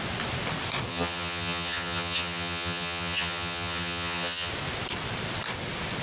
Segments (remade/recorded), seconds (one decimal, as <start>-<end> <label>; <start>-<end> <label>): 0.0-0.9 recorded; 0.9-4.5 remade; 4.5-6.0 recorded